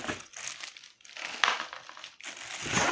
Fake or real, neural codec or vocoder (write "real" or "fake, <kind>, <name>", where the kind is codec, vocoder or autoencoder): real